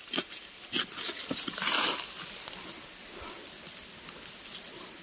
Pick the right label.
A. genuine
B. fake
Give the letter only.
A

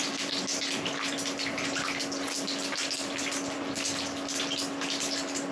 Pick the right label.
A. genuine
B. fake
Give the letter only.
A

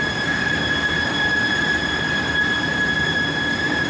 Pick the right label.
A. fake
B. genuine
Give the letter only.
B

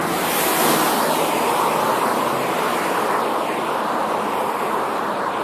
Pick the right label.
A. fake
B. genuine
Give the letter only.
B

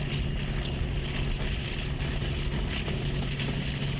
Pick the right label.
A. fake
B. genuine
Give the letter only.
B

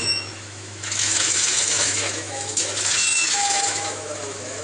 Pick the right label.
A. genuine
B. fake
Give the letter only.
B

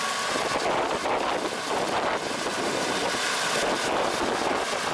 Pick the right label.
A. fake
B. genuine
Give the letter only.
B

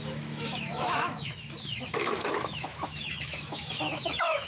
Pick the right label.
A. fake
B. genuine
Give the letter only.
A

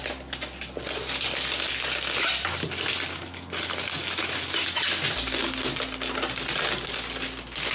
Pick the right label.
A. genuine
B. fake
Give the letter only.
A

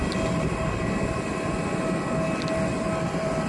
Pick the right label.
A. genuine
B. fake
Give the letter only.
A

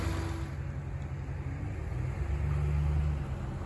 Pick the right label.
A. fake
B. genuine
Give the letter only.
B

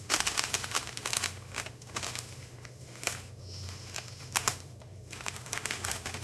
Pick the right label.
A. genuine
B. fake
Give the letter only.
B